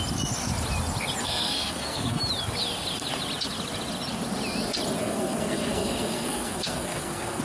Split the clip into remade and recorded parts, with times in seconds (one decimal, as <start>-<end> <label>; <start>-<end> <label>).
0.0-1.2 recorded; 1.2-2.2 remade; 2.2-5.0 recorded; 5.0-7.4 remade